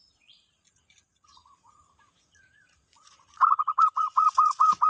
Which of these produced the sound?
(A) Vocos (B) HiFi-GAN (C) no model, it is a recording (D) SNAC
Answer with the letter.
A